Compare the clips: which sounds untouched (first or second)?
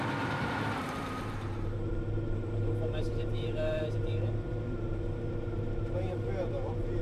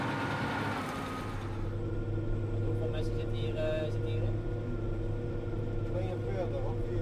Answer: second